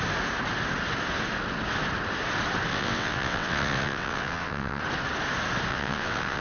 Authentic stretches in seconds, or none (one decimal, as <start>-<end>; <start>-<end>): 0.0-2.7; 4.8-5.7